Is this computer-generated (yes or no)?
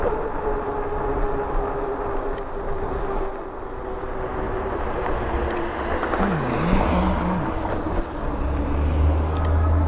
no